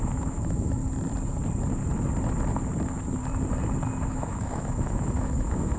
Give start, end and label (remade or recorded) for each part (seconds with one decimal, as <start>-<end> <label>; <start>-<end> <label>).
0.0-0.8 remade; 0.8-4.0 recorded; 4.0-5.8 remade